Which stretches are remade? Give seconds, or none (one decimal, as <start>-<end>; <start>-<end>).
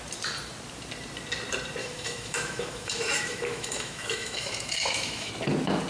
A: 1.8-5.3